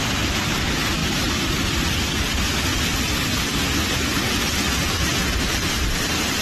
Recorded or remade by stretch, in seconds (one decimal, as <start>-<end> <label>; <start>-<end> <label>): 0.0-6.4 remade